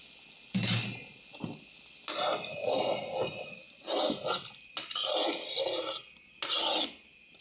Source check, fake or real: real